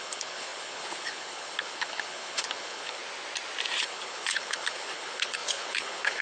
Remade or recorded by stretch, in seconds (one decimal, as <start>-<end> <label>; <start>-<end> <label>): 0.0-3.0 remade; 3.0-3.8 recorded; 3.8-6.2 remade